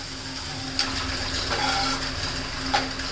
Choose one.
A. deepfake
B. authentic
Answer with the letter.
B